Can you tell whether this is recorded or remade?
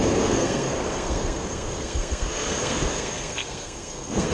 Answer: remade